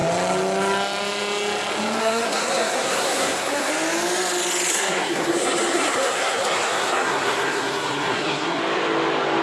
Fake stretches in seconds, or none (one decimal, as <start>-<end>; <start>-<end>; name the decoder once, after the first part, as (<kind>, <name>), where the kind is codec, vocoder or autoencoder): 2.0-3.7 (codec, SNAC); 4.7-8.6